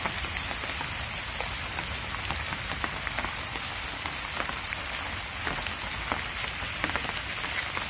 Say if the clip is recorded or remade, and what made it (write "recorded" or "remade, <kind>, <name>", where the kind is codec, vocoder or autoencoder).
recorded